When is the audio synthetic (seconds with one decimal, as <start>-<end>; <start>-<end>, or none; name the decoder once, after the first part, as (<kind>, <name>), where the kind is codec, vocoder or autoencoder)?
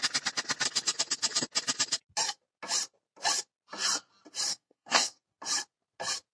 4.5-5.2 (codec, SNAC)